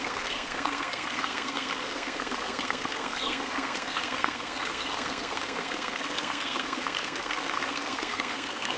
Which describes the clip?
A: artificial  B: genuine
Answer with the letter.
A